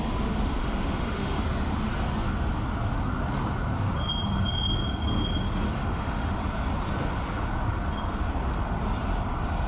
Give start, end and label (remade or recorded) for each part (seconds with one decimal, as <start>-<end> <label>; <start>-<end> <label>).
0.0-0.6 recorded; 0.6-1.4 remade; 1.4-5.8 recorded; 5.8-6.4 remade; 6.4-9.7 recorded